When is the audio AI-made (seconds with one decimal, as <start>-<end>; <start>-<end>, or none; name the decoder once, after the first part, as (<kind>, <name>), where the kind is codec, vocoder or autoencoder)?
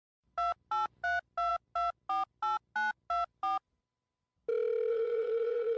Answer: 4.9-5.8 (vocoder, WaveNeXt)